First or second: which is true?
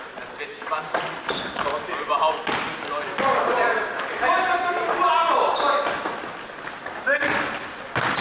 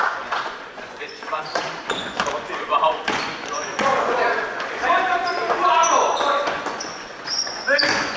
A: first